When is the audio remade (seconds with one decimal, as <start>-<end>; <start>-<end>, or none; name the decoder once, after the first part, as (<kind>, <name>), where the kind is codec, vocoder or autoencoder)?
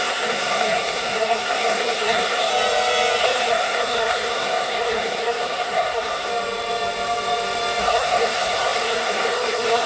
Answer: 0.0-2.5 (codec, SNAC); 3.2-6.3; 7.8-9.9